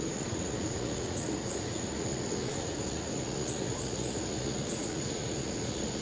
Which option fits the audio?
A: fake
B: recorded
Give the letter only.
A